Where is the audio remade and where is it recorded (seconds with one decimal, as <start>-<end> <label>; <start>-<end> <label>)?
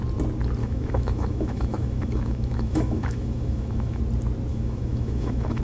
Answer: 0.0-0.6 recorded; 0.6-4.0 remade; 4.0-4.5 recorded; 4.5-5.6 remade